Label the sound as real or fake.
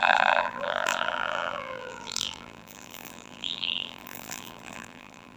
fake